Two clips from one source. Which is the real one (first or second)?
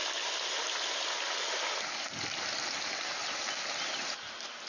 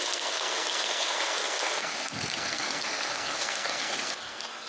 first